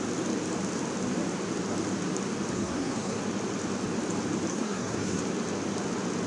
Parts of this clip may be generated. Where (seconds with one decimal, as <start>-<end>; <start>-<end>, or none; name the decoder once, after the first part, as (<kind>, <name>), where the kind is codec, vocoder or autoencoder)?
2.5-3.2 (codec, SNAC); 4.5-5.2